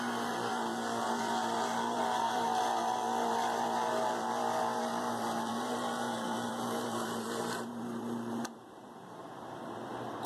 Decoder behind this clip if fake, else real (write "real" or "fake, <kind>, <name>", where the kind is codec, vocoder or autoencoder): fake, vocoder, BigVGAN v2